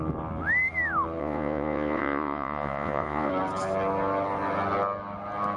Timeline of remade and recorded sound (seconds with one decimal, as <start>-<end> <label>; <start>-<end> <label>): 0.0-1.2 recorded; 1.2-3.3 remade; 3.3-5.6 recorded